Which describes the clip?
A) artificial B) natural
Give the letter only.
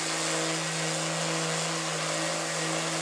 B